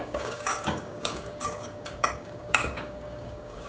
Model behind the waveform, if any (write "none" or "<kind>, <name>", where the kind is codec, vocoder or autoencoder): codec, DAC